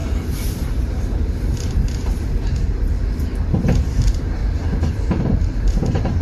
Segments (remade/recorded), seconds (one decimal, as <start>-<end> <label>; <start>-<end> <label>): 0.0-4.4 remade; 4.4-4.9 recorded; 4.9-6.2 remade